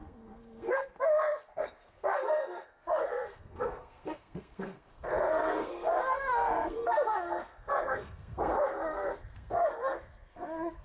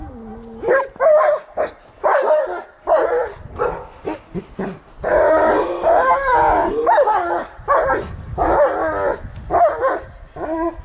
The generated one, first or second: first